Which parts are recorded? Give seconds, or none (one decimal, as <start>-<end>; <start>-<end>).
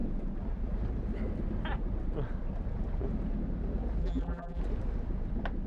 0.0-4.0; 4.6-5.7